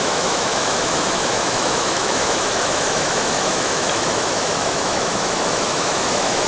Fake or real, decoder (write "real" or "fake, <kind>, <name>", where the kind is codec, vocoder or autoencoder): fake, autoencoder, DAC-VAE